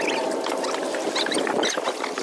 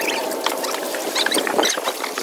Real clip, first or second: first